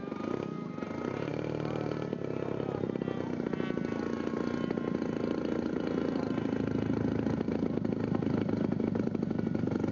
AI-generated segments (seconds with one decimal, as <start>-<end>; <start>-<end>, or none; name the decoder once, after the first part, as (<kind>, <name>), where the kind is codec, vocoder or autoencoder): none